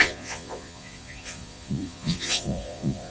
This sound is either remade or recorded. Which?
remade